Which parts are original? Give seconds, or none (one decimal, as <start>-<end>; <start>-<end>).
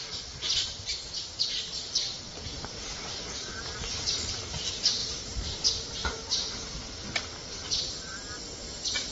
0.0-5.0; 5.7-9.1